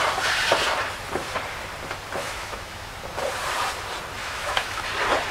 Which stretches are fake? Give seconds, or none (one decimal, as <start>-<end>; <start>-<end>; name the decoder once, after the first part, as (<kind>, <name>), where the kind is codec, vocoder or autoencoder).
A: 2.2-2.9 (autoencoder, DAC-VAE); 4.2-4.8